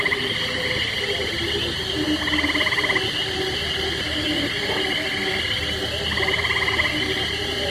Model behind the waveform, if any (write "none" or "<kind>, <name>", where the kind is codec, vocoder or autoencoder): none